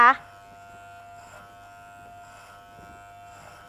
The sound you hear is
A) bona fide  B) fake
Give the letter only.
A